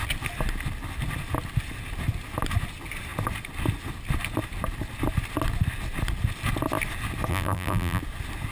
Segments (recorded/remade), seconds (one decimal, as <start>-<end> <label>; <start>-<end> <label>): 0.0-7.3 recorded; 7.3-8.0 remade; 8.0-8.5 recorded